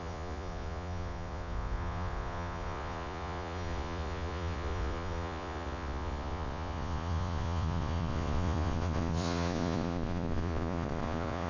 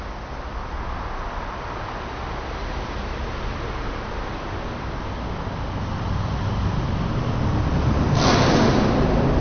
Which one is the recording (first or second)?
second